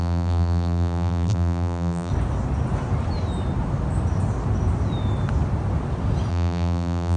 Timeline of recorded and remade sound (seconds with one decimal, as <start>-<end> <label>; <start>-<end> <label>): 0.0-2.1 remade; 2.1-6.3 recorded; 6.3-7.2 remade